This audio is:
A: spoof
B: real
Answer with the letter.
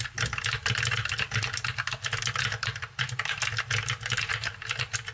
B